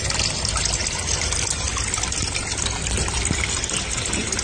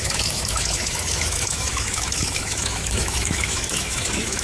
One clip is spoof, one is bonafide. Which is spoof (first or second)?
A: second